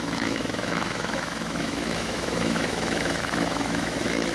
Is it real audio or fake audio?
fake